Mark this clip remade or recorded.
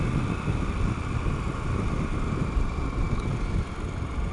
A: recorded